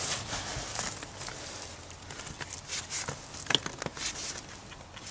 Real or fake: real